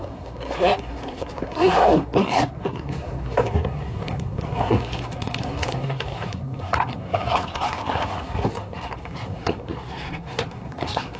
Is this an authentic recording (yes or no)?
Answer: no